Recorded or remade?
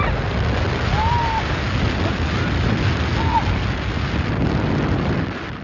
recorded